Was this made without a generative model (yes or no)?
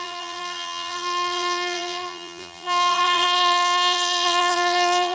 no